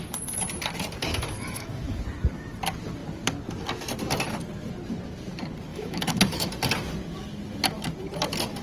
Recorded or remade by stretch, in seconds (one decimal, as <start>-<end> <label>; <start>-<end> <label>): 0.0-1.1 recorded; 1.1-2.0 remade; 2.0-5.7 recorded; 5.7-6.5 remade; 6.5-8.6 recorded